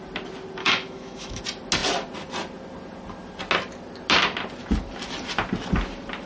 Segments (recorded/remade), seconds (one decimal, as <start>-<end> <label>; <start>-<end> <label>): 0.0-0.6 recorded; 0.6-1.4 remade; 1.4-6.3 recorded

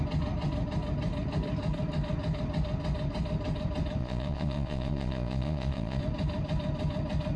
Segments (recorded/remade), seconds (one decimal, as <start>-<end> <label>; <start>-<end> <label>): 0.0-4.0 recorded; 4.0-6.0 remade; 6.0-7.4 recorded